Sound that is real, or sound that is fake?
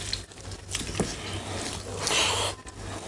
real